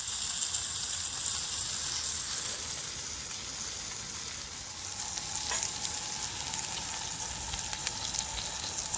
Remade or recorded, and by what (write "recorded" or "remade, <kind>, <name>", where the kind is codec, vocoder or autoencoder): recorded